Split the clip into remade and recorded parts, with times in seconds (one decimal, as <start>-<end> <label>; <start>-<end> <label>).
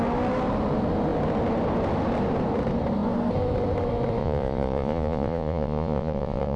0.0-4.2 recorded; 4.2-6.6 remade